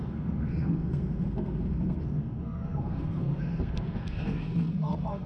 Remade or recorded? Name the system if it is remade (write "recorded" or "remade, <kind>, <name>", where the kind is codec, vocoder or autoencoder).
remade, codec, SNAC